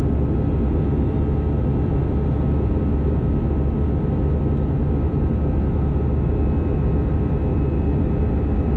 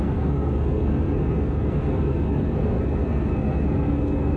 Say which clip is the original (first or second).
first